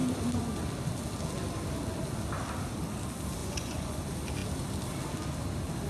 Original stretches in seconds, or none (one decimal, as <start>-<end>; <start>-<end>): 0.0-3.4; 4.0-5.9